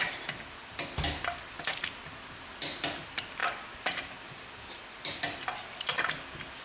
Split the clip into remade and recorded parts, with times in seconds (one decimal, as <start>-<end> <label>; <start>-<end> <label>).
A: 0.0-6.6 recorded

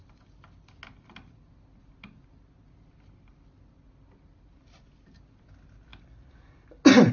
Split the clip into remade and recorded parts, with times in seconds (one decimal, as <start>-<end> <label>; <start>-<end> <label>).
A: 0.0-7.1 recorded

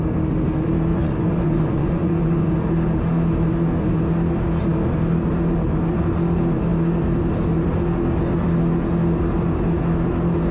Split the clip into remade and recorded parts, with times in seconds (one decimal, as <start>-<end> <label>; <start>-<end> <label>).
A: 0.0-0.9 recorded; 0.9-2.5 remade; 2.5-10.5 recorded

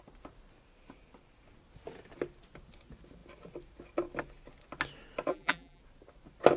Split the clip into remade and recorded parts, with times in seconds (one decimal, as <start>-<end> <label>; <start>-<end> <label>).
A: 0.0-5.3 recorded; 5.3-5.8 remade; 5.8-6.6 recorded

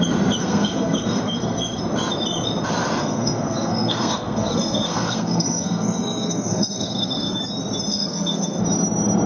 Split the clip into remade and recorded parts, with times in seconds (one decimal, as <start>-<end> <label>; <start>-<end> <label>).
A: 0.0-0.4 recorded; 0.4-1.8 remade; 1.8-3.0 recorded; 3.0-7.4 remade; 7.4-7.9 recorded; 7.9-8.6 remade; 8.6-9.3 recorded

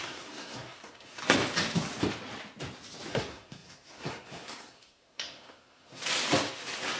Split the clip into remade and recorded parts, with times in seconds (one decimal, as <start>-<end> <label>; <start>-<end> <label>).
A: 0.0-1.2 remade; 1.2-3.1 recorded; 3.1-6.0 remade; 6.0-7.0 recorded